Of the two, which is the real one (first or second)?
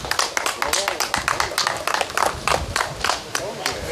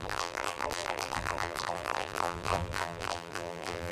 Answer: first